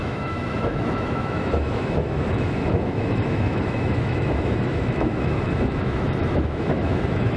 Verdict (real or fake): fake